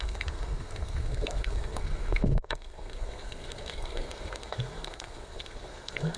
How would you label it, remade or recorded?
remade